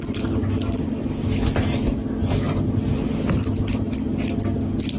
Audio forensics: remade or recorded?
recorded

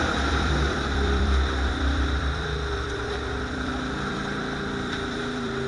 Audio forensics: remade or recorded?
remade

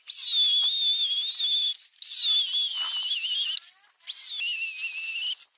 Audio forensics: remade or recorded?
recorded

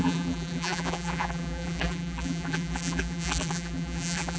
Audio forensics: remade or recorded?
remade